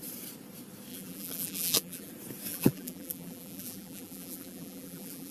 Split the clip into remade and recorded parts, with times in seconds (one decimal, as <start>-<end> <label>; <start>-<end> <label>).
0.0-0.9 recorded; 0.9-2.1 remade; 2.1-2.5 recorded; 2.5-5.3 remade